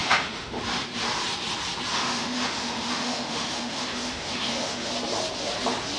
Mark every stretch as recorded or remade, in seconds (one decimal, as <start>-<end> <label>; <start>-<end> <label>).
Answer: 0.0-0.6 remade; 0.6-1.9 recorded; 1.9-4.9 remade; 4.9-6.0 recorded